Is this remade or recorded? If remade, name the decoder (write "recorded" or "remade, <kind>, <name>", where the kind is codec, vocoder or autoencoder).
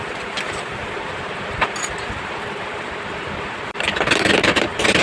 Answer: remade, vocoder, BigVGAN v2